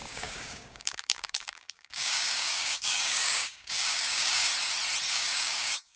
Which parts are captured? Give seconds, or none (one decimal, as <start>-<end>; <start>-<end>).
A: 4.5-5.1